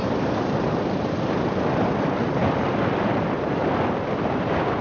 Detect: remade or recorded remade